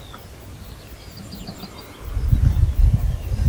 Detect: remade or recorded recorded